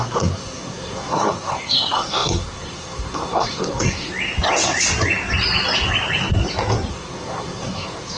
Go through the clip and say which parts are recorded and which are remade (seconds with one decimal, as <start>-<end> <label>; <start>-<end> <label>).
0.0-4.1 remade; 4.1-6.9 recorded; 6.9-8.2 remade